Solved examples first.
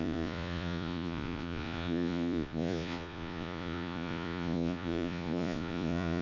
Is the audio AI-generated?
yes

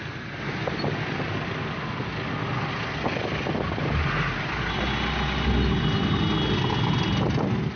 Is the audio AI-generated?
no